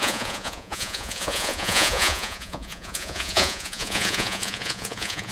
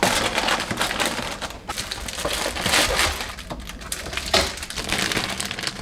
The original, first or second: second